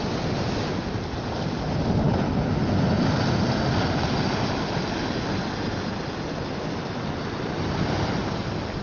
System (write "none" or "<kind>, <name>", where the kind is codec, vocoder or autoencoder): none